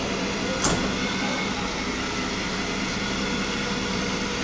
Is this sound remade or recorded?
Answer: recorded